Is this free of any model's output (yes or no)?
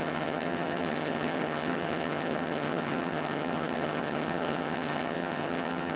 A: no